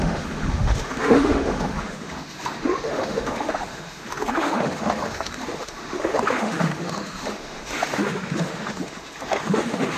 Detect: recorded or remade remade